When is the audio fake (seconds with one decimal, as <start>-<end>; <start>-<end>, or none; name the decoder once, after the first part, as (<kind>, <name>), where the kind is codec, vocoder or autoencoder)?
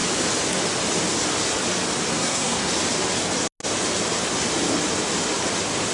2.1-2.7 (codec, SNAC)